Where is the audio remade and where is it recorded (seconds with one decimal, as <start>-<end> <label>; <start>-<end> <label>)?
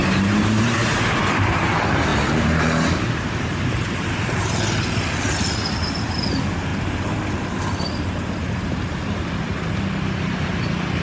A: 0.0-1.6 remade; 1.6-2.1 recorded; 2.1-4.4 remade; 4.4-11.0 recorded